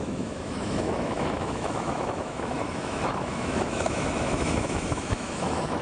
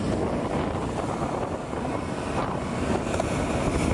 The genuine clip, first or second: second